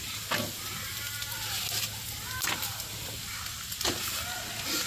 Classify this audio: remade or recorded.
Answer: recorded